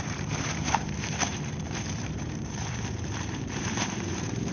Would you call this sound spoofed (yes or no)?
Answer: yes